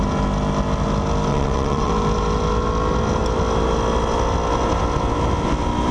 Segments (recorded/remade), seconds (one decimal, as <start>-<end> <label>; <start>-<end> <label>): 0.0-1.3 recorded; 1.3-1.9 remade; 1.9-5.9 recorded